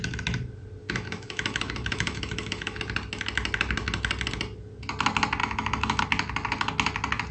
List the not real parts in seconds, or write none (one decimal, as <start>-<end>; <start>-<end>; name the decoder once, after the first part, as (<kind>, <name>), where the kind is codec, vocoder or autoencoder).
0.8-2.8 (autoencoder, DAC-VAE); 5.4-6.0